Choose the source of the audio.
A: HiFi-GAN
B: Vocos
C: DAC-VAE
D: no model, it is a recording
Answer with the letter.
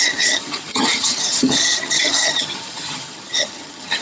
A